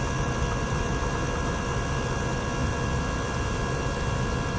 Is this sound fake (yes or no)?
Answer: no